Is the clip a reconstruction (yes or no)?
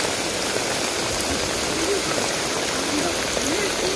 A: no